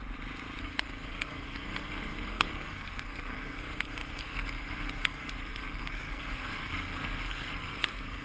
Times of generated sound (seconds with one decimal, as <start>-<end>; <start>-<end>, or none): 0.6-8.2